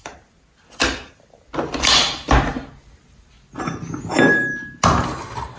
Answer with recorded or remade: recorded